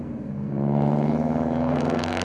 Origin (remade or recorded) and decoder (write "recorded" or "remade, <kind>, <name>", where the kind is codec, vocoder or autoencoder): remade, codec, SNAC